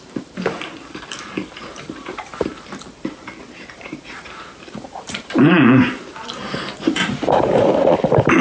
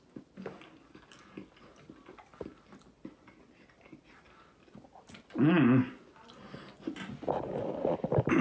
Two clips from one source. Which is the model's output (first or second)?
first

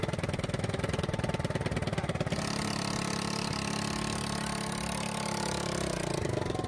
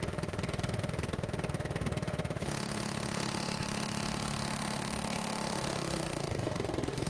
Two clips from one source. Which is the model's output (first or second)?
second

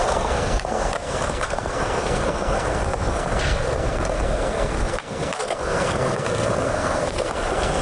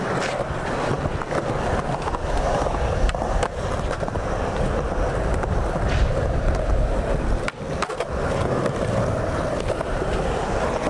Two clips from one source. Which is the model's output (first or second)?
first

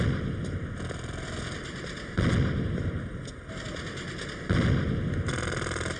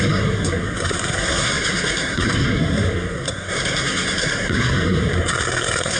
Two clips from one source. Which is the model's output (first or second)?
second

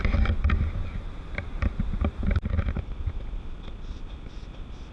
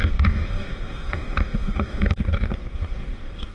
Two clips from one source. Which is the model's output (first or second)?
second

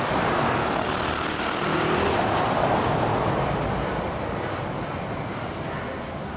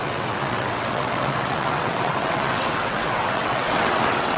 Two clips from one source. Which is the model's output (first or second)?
second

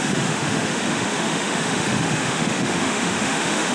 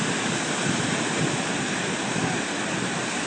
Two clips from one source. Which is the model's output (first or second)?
first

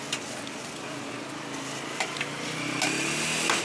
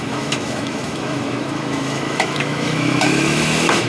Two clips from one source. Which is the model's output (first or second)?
second